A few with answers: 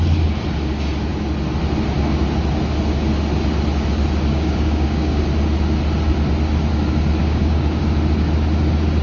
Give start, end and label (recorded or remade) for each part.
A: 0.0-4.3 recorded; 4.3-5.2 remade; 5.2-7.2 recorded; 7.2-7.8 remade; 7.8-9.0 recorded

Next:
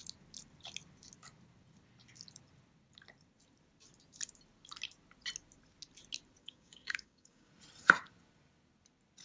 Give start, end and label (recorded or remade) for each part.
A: 0.0-6.4 recorded; 6.4-7.5 remade; 7.5-9.2 recorded

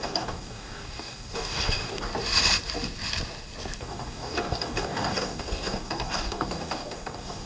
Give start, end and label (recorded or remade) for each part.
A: 0.0-2.1 remade; 2.1-3.8 recorded; 3.8-7.5 remade